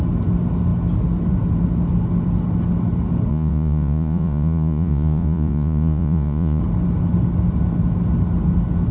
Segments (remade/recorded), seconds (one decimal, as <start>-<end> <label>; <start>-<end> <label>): 0.0-3.3 recorded; 3.3-6.6 remade; 6.6-8.9 recorded